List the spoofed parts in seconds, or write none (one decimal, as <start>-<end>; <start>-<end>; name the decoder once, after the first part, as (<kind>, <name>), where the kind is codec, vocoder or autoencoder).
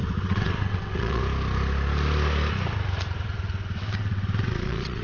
0.0-1.2 (vocoder, WaveNeXt); 3.8-5.0